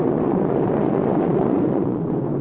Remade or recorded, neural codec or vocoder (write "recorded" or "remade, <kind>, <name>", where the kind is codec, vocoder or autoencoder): remade, vocoder, Vocos